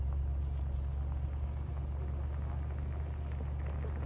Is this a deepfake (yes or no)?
no